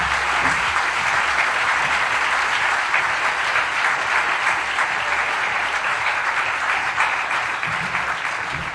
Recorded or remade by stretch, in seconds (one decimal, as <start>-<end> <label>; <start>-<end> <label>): 0.0-0.4 recorded; 0.4-3.8 remade; 3.8-5.1 recorded; 5.1-8.0 remade; 8.0-8.7 recorded